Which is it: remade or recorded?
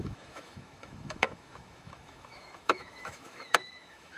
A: remade